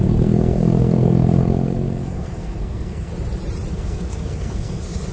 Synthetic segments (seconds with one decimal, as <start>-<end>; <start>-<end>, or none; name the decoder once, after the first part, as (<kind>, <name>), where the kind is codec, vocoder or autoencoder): 0.0-3.1 (codec, SNAC); 3.7-5.1